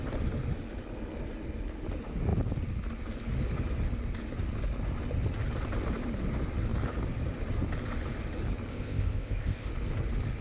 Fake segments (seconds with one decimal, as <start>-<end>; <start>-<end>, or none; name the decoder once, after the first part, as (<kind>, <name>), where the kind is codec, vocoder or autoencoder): 8.7-9.7 (codec, ZipCodec)